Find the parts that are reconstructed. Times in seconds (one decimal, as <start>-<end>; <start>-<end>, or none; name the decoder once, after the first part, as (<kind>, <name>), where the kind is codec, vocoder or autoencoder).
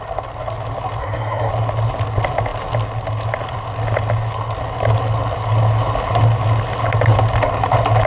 1.0-1.5 (codec, SNAC)